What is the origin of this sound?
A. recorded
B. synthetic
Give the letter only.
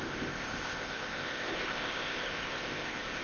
B